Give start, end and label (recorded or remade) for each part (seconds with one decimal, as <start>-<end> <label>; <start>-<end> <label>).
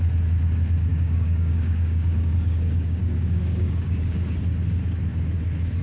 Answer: 0.0-0.9 recorded; 0.9-4.4 remade; 4.4-5.8 recorded